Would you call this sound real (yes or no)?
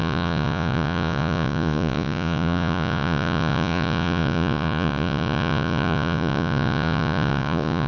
no